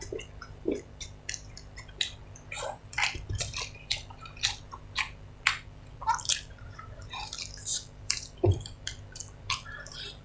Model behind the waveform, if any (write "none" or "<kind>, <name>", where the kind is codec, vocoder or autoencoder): vocoder, BigVGAN v2